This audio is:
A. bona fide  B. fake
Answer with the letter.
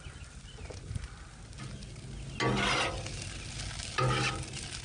A